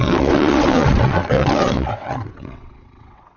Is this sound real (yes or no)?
no